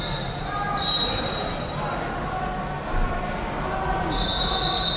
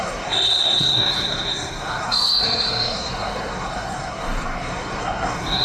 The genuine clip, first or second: first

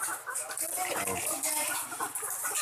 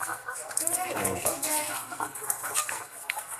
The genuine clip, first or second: first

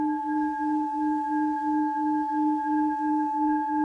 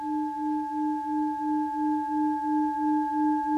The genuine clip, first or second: second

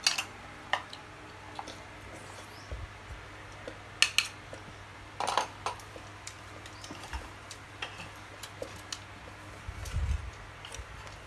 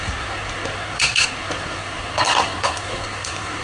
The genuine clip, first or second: first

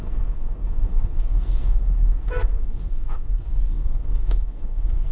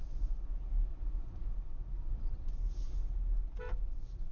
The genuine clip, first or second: second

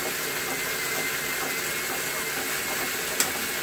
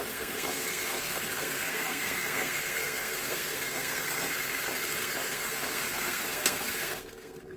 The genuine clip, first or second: first